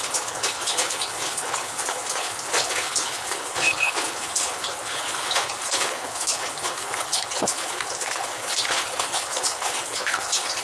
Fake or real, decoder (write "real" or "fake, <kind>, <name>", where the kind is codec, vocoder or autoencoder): fake, codec, HILCodec